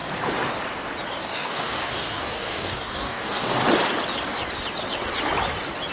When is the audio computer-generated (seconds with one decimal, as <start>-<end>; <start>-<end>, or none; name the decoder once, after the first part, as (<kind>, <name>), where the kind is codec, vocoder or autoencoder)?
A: 1.2-3.6 (codec, DAC)